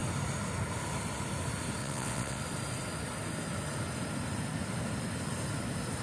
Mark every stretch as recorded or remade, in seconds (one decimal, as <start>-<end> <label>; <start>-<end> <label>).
0.0-1.8 recorded; 1.8-2.4 remade; 2.4-6.0 recorded

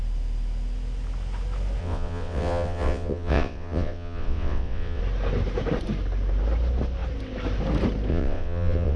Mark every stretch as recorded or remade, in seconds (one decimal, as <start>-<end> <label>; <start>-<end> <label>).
0.0-1.8 recorded; 1.8-5.0 remade; 5.0-8.1 recorded; 8.1-9.0 remade